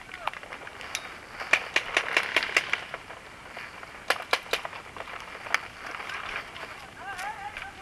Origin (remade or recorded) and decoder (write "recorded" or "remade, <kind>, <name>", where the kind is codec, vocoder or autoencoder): recorded